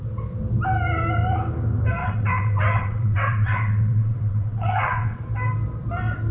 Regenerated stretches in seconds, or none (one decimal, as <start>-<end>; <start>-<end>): 2.0-5.2